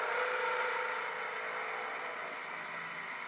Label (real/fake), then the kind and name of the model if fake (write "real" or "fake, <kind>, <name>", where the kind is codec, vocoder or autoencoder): real